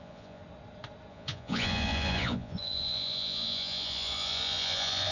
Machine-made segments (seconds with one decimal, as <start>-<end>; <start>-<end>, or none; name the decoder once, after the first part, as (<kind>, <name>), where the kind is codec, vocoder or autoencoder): 0.0-0.4 (vocoder, Vocos); 1.1-5.1

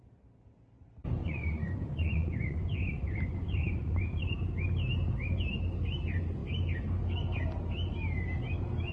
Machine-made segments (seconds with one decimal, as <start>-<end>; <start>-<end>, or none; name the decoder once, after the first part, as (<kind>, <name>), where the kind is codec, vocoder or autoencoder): 1.2-4.3 (vocoder, Vocos)

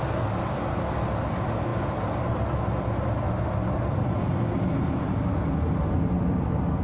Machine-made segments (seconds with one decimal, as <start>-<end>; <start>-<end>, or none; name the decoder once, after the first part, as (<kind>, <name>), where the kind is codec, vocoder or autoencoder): none

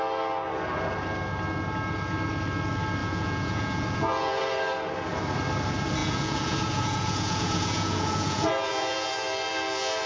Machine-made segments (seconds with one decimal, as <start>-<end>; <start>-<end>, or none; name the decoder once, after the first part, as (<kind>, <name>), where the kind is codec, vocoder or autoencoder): 3.0-4.4 (vocoder, Vocos); 6.0-9.1

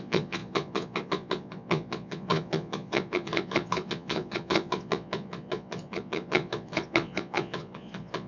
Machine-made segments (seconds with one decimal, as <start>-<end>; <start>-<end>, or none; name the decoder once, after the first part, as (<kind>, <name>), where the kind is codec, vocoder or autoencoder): 0.0-8.3 (vocoder, Vocos)

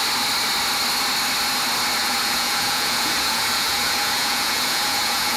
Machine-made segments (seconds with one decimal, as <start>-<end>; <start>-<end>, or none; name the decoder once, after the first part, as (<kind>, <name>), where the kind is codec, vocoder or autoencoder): 2.0-5.4 (vocoder, Vocos)